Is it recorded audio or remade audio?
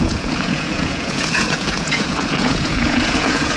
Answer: remade